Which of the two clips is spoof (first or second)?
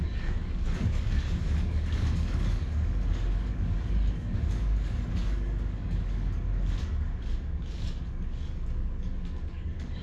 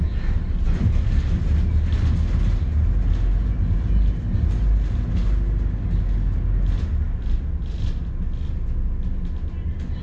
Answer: first